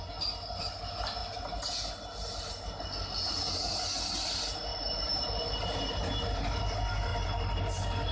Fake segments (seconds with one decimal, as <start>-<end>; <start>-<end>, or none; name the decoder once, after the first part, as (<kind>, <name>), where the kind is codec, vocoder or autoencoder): 4.7-6.0 (vocoder, BigVGAN v2)